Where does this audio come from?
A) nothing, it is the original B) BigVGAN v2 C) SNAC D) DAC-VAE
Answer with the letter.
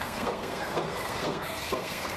C